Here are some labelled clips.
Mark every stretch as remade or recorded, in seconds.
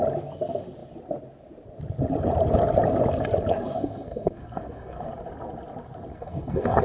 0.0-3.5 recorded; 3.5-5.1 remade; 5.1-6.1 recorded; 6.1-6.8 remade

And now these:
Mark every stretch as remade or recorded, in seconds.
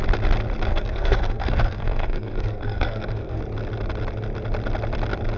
0.0-0.7 recorded; 0.7-3.4 remade; 3.4-5.4 recorded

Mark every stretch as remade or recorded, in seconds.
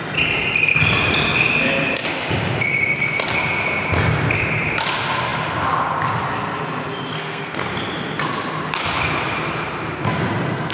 0.0-7.1 recorded; 7.1-7.6 remade; 7.6-10.7 recorded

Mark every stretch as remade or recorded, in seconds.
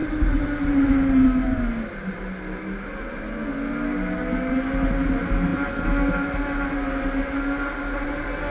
0.0-8.5 recorded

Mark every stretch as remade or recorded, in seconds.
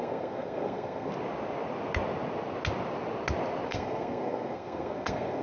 0.0-1.1 remade; 1.1-3.7 recorded; 3.7-5.4 remade